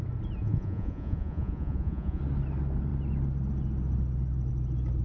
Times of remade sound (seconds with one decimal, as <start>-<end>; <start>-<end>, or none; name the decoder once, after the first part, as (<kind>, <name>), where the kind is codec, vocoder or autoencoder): 0.4-2.2 (vocoder, Vocos)